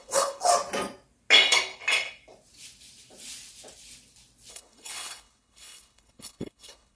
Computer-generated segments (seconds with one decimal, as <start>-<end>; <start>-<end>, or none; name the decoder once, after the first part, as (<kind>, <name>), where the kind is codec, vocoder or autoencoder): 0.0-0.5 (codec, HILCodec); 4.5-7.0